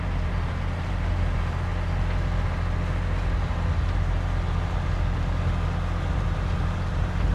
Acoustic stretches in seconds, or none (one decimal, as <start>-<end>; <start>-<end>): 1.7-6.1